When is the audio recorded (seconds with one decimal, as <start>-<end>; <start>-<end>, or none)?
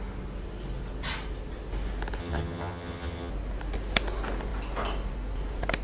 0.0-2.2; 3.3-5.8